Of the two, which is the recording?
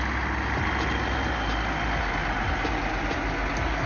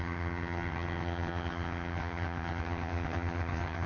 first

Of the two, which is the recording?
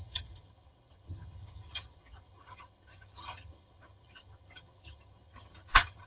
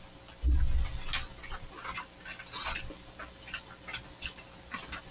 second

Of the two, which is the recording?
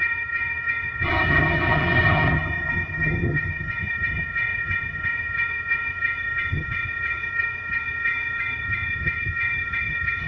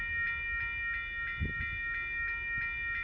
second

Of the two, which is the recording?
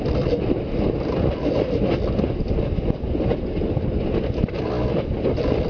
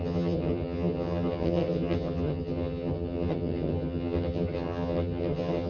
first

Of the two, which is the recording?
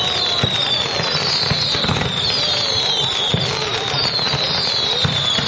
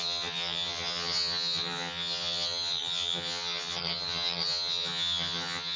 first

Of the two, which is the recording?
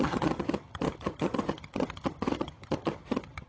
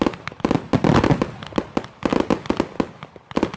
second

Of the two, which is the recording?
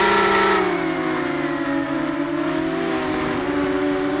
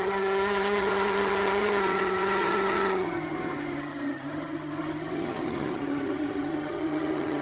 first